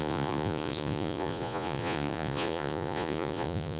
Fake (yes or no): yes